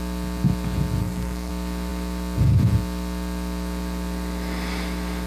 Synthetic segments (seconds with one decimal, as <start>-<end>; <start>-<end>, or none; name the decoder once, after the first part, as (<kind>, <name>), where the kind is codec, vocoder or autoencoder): 1.0-1.5 (codec, SNAC)